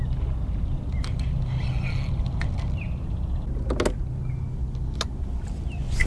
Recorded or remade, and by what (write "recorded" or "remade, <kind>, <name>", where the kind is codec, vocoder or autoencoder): recorded